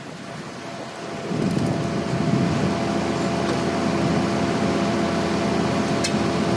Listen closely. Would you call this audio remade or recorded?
recorded